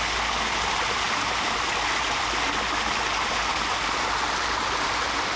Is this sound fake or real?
real